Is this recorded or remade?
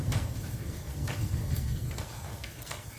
remade